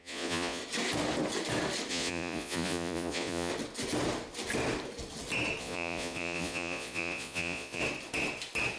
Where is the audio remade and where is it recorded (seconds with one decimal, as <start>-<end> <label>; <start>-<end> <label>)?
0.0-0.6 remade; 0.6-1.9 recorded; 1.9-3.5 remade; 3.5-5.6 recorded; 5.6-7.8 remade; 7.8-8.8 recorded